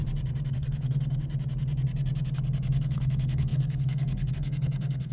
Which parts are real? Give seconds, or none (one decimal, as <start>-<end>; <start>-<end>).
0.0-0.5; 1.2-2.8